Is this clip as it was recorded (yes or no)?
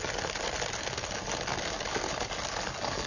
yes